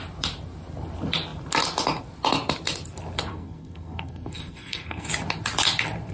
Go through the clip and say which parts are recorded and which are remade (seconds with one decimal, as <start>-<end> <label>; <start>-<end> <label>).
0.0-3.3 recorded; 3.3-5.1 remade; 5.1-6.1 recorded